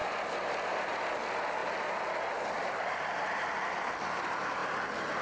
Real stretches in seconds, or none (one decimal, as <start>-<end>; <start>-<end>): 0.0-5.2